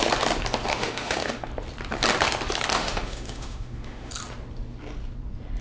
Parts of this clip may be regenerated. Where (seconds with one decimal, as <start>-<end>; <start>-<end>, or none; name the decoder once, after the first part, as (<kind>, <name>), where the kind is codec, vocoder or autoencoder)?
0.7-1.5 (autoencoder, DAC-VAE); 2.7-4.1